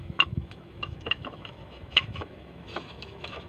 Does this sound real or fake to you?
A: fake